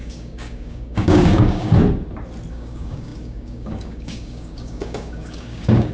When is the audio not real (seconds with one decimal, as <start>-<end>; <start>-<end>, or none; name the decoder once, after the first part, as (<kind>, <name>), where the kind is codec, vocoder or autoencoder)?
0.0-1.8 (codec, DAC); 2.5-5.9